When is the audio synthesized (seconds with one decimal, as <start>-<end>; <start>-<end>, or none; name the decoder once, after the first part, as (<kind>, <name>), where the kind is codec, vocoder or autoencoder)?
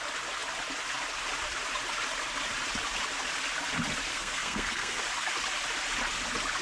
4.1-5.0 (codec, SNAC)